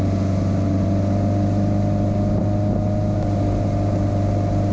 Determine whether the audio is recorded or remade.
recorded